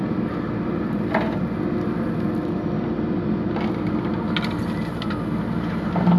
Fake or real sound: real